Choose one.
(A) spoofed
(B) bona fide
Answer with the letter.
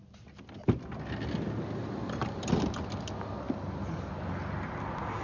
B